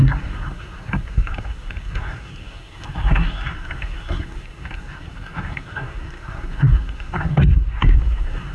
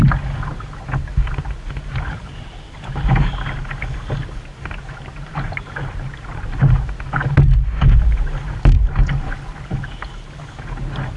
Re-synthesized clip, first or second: first